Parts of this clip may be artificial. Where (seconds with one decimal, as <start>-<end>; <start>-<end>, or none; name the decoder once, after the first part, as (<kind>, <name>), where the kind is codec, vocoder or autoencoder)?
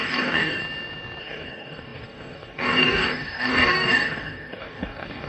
0.0-0.6 (codec, DAC); 1.2-5.3